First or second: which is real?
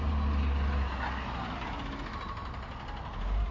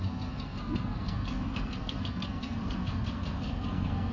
first